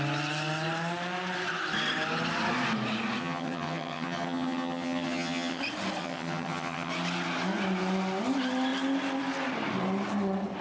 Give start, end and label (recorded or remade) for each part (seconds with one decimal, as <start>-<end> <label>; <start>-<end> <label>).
0.0-3.2 recorded; 3.2-5.6 remade; 5.6-6.0 recorded; 6.0-6.9 remade; 6.9-10.6 recorded